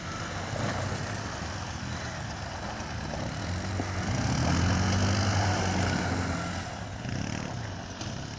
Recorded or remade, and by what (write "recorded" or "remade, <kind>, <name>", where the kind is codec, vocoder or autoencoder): recorded